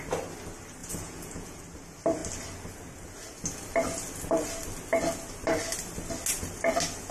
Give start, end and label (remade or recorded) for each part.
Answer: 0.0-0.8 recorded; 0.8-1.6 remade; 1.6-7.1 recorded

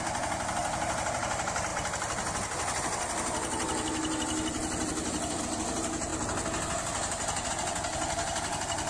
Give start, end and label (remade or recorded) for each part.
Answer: 0.0-8.9 recorded

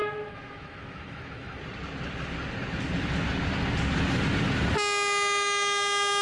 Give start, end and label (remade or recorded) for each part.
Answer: 0.0-1.6 remade; 1.6-6.2 recorded

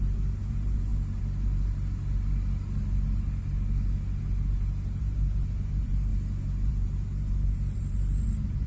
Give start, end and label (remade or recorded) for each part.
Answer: 0.0-0.9 remade; 0.9-5.0 recorded; 5.0-6.1 remade; 6.1-6.7 recorded; 6.7-8.7 remade

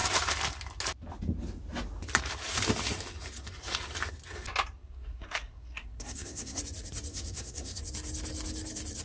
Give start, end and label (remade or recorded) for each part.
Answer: 0.0-4.8 recorded; 4.8-6.6 remade; 6.6-7.1 recorded; 7.1-7.8 remade; 7.8-9.0 recorded

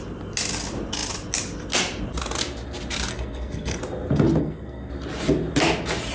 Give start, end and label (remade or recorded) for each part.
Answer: 0.0-3.1 recorded; 3.1-3.8 remade; 3.8-4.4 recorded; 4.4-4.9 remade; 4.9-6.1 recorded

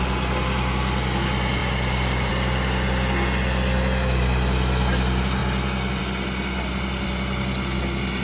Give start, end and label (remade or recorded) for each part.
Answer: 0.0-8.2 recorded

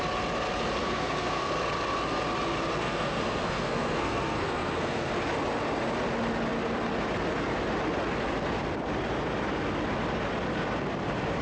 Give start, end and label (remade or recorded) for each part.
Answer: 0.0-0.8 recorded; 0.8-1.5 remade; 1.5-2.8 recorded; 2.8-5.1 remade; 5.1-11.4 recorded